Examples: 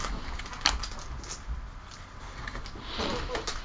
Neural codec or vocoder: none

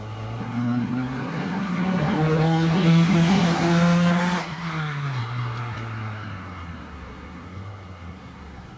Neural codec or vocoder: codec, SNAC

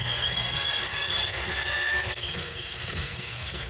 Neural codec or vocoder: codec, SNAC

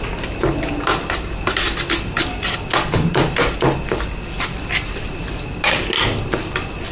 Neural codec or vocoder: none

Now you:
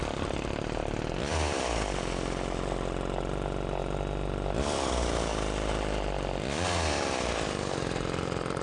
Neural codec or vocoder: none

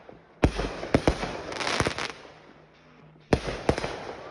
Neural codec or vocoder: none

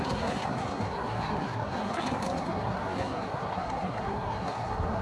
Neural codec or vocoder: codec, SNAC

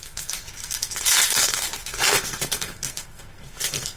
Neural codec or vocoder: codec, SNAC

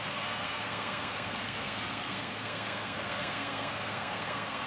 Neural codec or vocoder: codec, SNAC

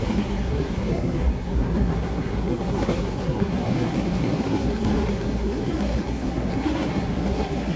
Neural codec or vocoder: codec, SNAC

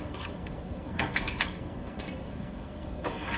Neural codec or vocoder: codec, SNAC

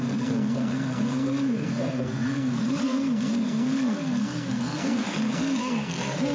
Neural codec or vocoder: codec, SNAC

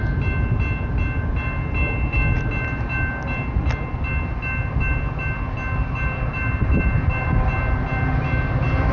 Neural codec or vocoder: none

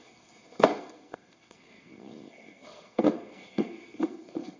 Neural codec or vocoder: codec, SNAC